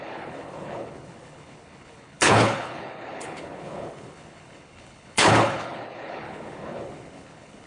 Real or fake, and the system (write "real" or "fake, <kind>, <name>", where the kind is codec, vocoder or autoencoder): fake, codec, HILCodec